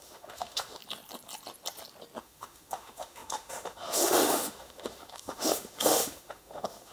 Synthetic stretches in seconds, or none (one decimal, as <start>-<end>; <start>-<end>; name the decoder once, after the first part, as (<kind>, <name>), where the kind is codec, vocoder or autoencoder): 0.0-0.8 (autoencoder, DAC-VAE); 2.2-6.9